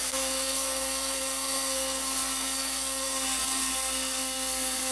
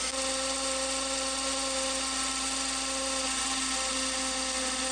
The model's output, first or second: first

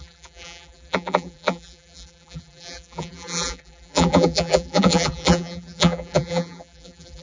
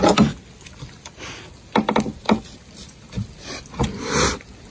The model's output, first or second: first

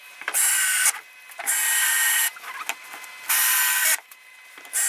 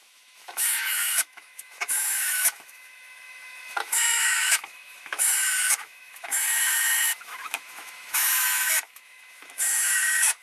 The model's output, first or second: second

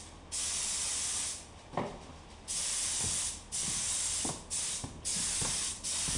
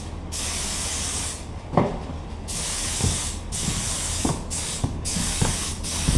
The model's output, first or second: second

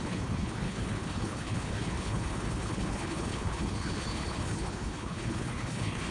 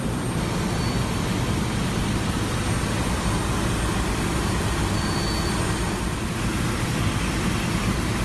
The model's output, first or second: first